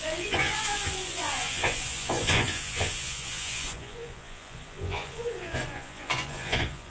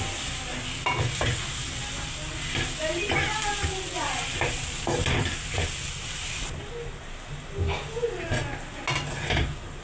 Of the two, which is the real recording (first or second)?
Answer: second